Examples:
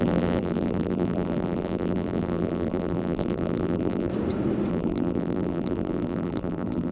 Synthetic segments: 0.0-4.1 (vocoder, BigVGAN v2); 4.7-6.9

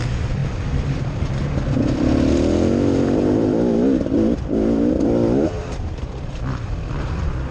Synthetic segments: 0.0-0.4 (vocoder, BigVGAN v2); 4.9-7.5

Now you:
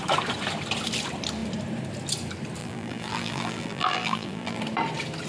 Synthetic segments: 2.6-4.6 (vocoder, BigVGAN v2)

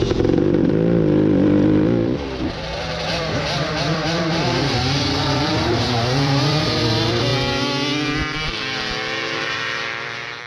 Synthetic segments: 0.0-7.3 (vocoder, BigVGAN v2); 9.4-10.5

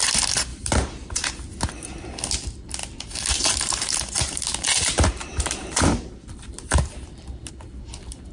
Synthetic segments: 0.5-1.3 (vocoder, BigVGAN v2); 2.8-7.5

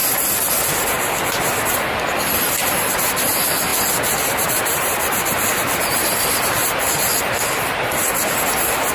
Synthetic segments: 2.6-3.2 (vocoder, BigVGAN v2)

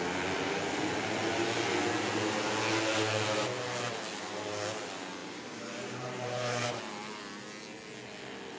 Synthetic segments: 5.2-6.8 (vocoder, BigVGAN v2)

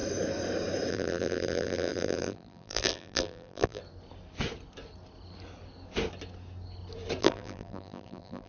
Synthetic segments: 0.9-3.8 (vocoder, BigVGAN v2); 7.2-8.5